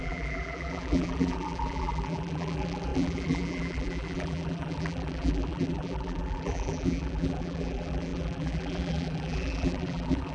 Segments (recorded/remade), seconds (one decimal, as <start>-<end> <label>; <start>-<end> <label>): 0.0-10.3 remade